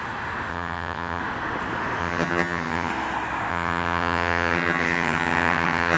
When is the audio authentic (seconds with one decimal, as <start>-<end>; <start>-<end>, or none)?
0.0-0.5; 1.2-2.0; 2.9-3.5